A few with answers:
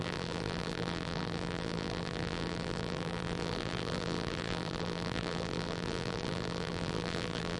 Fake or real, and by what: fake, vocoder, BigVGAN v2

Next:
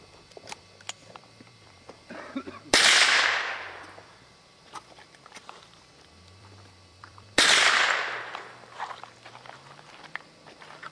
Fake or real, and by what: fake, vocoder, BigVGAN v2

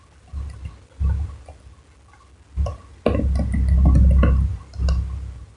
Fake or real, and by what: real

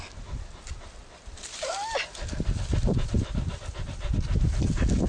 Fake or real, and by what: real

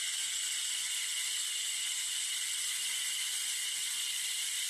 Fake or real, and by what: real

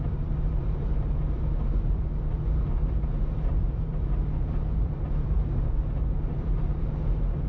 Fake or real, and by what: fake, vocoder, BigVGAN v2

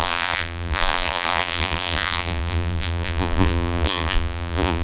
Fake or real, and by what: fake, vocoder, BigVGAN v2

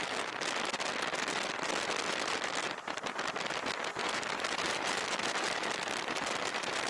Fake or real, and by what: fake, vocoder, BigVGAN v2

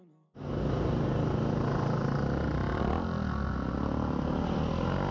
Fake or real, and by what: real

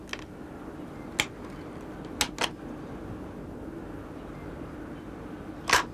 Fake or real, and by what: real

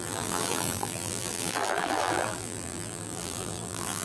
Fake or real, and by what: fake, vocoder, BigVGAN v2